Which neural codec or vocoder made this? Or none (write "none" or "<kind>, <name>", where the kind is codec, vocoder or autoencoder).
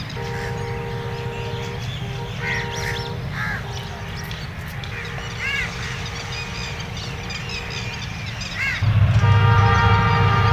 none